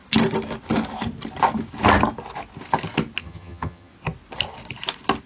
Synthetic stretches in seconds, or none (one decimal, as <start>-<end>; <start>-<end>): 3.2-3.9